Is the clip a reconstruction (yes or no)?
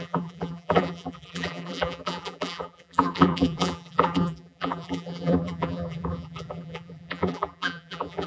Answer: yes